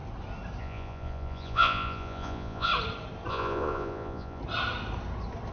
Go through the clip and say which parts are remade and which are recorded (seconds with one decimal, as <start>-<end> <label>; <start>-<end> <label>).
0.0-0.6 recorded; 0.6-2.7 remade; 2.7-3.3 recorded; 3.3-4.4 remade; 4.4-5.5 recorded